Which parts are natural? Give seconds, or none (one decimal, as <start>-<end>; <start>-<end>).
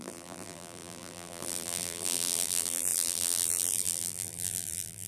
none